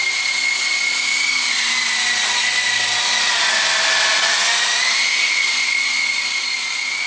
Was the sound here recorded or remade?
recorded